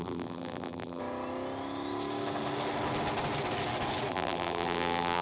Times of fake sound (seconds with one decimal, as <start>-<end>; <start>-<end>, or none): 0.0-1.0; 4.1-5.2